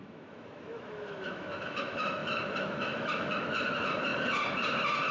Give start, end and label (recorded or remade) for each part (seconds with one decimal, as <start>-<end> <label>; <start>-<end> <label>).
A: 0.0-4.1 remade; 4.1-5.1 recorded

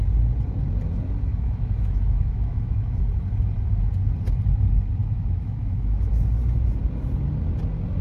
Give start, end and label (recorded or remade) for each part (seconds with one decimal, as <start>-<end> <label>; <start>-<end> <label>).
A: 0.0-1.3 recorded; 1.3-3.0 remade; 3.0-5.0 recorded; 5.0-6.1 remade; 6.1-8.0 recorded

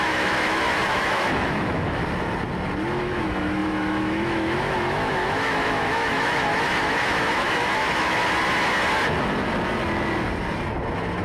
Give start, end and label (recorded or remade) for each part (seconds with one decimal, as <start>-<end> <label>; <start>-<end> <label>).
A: 0.0-2.0 remade; 2.0-3.0 recorded; 3.0-8.2 remade; 8.2-11.2 recorded

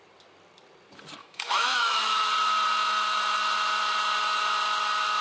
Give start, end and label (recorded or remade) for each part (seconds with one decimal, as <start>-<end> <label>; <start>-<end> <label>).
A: 0.0-1.2 recorded; 1.2-2.3 remade; 2.3-5.2 recorded

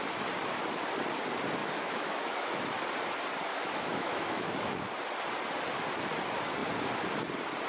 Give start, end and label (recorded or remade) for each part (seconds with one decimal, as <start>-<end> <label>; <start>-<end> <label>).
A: 0.0-1.6 recorded; 1.6-2.6 remade; 2.6-3.5 recorded; 3.5-4.9 remade; 4.9-7.7 recorded